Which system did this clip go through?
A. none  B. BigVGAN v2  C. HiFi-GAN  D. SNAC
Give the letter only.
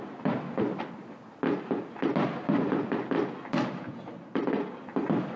A